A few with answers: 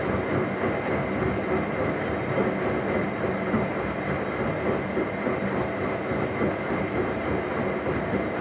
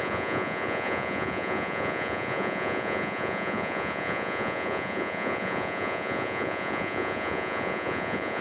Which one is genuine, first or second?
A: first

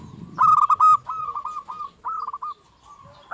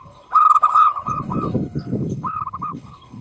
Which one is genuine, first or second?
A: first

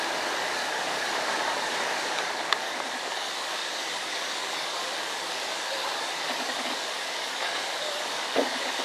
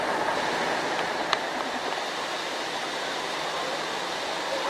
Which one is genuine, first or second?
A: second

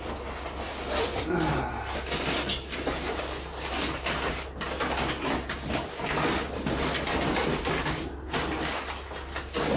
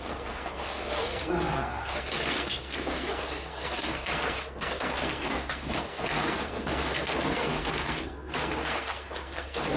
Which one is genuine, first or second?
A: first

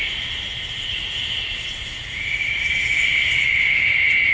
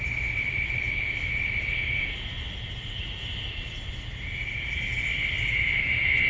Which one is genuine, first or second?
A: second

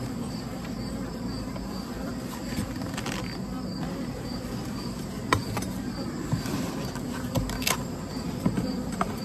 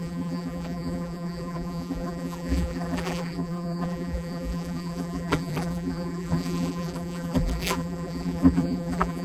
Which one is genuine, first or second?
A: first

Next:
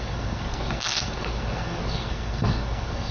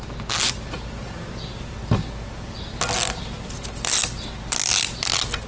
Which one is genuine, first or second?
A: second